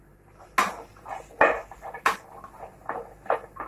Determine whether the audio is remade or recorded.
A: recorded